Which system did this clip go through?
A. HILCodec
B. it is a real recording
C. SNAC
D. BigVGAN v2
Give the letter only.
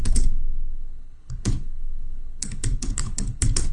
A